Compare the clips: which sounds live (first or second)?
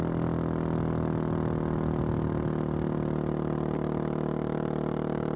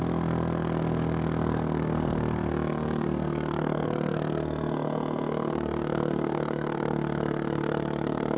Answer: first